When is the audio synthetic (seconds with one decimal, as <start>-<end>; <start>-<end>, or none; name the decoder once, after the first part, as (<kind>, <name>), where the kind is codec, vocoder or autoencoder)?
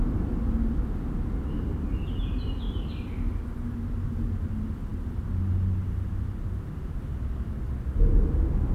none